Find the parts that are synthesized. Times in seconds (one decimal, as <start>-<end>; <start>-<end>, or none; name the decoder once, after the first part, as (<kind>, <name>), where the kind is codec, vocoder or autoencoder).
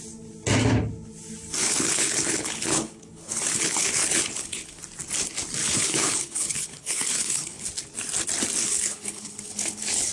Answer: 1.6-4.8 (codec, HILCodec); 5.6-7.7; 8.6-10.1